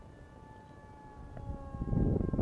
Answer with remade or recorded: recorded